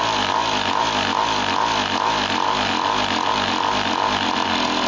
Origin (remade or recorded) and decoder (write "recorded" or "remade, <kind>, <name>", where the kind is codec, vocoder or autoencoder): recorded